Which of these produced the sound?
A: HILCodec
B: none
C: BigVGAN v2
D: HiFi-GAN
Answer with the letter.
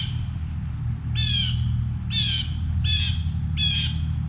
B